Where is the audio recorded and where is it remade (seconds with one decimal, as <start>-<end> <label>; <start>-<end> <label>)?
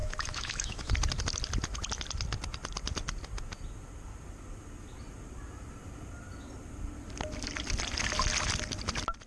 0.0-0.9 remade; 0.9-9.3 recorded